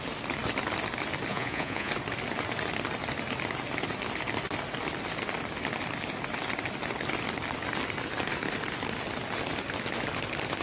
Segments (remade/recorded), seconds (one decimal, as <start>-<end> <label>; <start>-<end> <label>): 0.0-1.3 recorded; 1.3-1.9 remade; 1.9-10.6 recorded